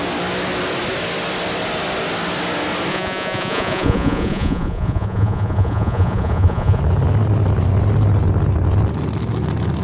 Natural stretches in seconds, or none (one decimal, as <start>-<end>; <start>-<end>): 0.0-2.9; 6.8-9.8